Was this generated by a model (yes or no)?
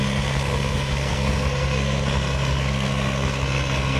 yes